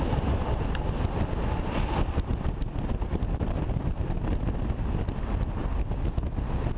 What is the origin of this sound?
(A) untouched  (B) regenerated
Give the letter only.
A